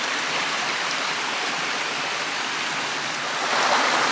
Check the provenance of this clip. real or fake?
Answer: real